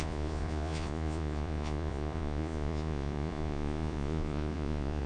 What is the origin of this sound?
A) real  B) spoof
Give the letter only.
B